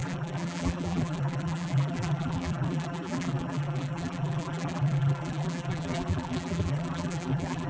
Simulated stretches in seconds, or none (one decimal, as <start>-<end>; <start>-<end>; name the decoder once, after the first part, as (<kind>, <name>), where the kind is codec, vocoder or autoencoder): 0.0-7.7 (vocoder, BigVGAN v2)